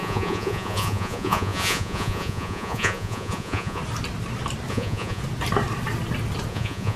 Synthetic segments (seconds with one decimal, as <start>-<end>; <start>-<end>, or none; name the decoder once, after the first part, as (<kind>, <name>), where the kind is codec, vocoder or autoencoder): 0.0-3.8 (vocoder, Vocos); 4.7-5.2; 6.5-7.0